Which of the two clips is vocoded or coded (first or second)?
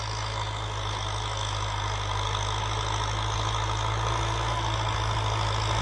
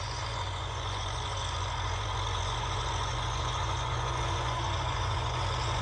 second